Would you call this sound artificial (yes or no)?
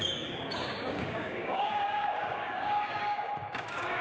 yes